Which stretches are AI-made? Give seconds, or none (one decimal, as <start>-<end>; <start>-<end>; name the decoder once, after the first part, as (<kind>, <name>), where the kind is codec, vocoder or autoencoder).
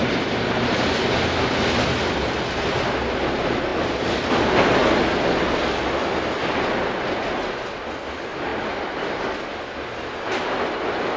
none